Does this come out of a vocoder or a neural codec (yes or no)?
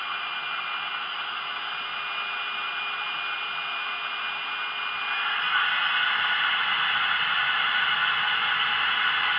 no